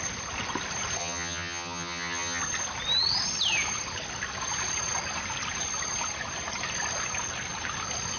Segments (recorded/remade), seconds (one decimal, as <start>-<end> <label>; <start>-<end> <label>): 0.0-1.0 recorded; 1.0-2.4 remade; 2.4-8.2 recorded